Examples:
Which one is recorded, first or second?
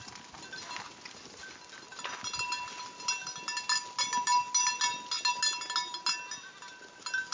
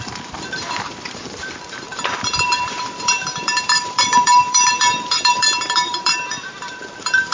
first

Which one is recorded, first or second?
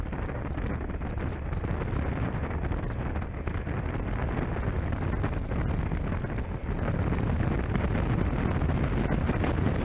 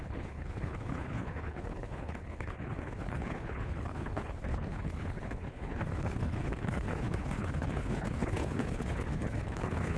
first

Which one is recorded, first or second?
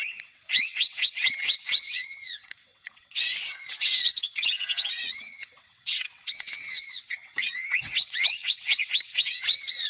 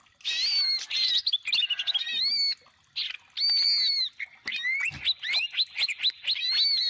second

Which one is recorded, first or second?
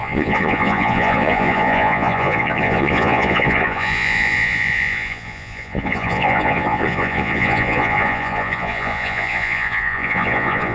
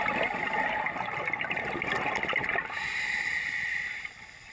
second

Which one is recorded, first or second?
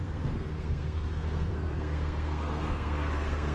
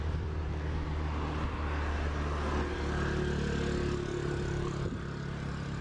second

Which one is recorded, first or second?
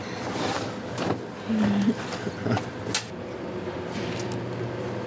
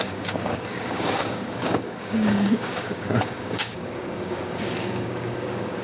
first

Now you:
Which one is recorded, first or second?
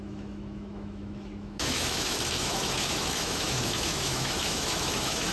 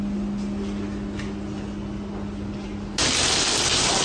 second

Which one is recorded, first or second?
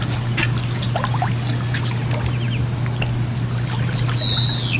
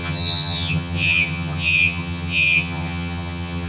first